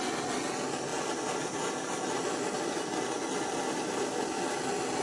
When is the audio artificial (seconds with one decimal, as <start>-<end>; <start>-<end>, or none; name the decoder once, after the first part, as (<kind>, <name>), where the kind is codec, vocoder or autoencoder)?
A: none